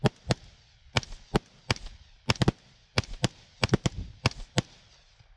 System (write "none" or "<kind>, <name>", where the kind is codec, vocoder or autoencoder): none